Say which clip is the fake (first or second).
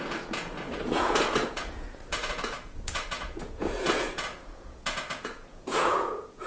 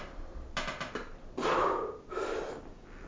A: first